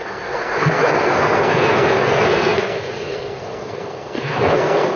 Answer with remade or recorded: remade